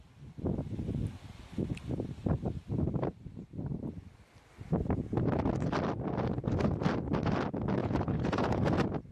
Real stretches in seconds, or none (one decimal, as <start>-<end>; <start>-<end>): 0.0-7.8; 8.7-9.1

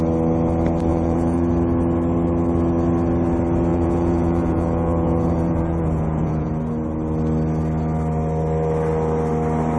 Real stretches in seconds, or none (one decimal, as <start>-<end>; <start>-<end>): 0.0-0.9; 1.5-3.7; 6.5-9.8

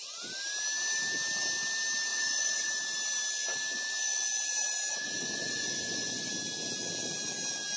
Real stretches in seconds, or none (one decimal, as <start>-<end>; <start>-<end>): 0.0-2.1; 2.7-4.9; 6.3-7.8

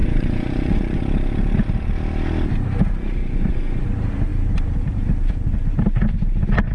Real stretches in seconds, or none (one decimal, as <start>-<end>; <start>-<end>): 1.0-3.2; 3.8-6.7

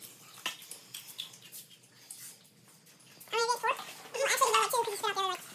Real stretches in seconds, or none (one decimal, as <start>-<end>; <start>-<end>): 0.0-5.5

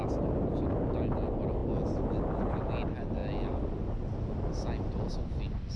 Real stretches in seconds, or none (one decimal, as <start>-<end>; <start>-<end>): 0.0-5.8

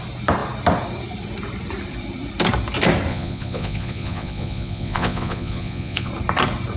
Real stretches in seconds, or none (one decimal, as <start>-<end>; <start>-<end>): 0.0-3.1; 6.1-6.8